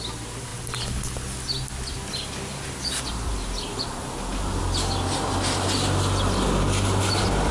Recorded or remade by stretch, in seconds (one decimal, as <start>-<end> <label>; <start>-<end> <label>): 0.0-7.5 recorded

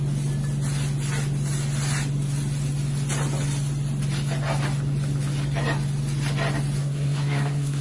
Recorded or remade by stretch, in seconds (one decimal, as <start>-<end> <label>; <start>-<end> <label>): 0.0-6.8 recorded; 6.8-7.8 remade

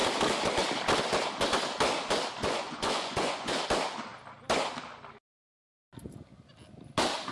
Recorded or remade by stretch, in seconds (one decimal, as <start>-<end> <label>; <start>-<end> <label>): 0.0-2.4 recorded; 2.4-3.6 remade; 3.6-7.3 recorded

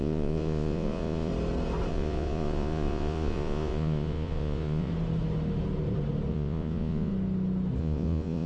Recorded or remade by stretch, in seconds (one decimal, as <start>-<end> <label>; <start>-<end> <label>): 0.0-1.3 remade; 1.3-1.9 recorded; 1.9-4.9 remade; 4.9-6.3 recorded; 6.3-7.1 remade; 7.1-7.8 recorded; 7.8-8.5 remade